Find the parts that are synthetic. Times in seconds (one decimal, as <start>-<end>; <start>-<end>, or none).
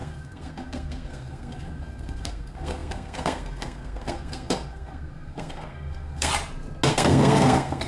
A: 0.0-6.3; 6.9-7.9